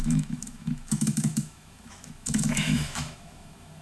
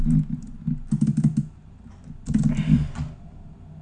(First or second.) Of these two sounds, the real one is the second